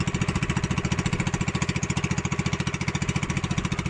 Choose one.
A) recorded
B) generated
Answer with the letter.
A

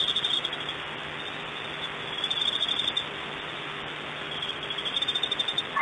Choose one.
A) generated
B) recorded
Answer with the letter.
B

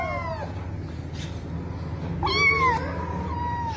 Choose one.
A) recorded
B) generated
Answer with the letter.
A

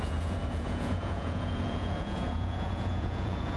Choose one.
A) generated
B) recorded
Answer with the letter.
A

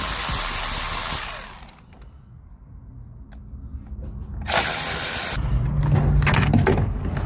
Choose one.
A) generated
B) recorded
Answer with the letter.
B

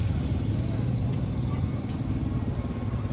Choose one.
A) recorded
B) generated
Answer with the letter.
A